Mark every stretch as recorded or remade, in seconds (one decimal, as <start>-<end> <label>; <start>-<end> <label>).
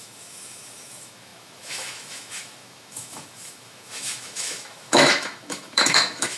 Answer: 0.0-6.4 remade